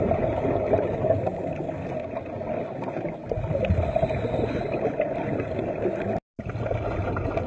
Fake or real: real